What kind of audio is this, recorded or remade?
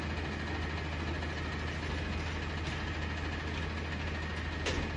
recorded